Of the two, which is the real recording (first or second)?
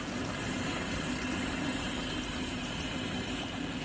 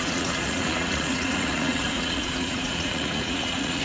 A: first